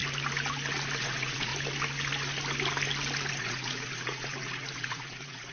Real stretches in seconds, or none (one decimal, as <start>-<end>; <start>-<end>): 0.0-1.0; 1.5-3.4